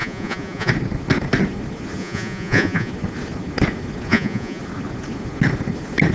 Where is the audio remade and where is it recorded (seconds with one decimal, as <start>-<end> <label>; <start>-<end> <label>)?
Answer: 0.0-0.7 remade; 0.7-2.0 recorded; 2.0-2.9 remade; 2.9-4.1 recorded; 4.1-4.6 remade; 4.6-6.1 recorded